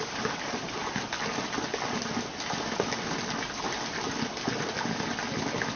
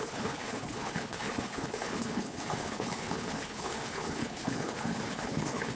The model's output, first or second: second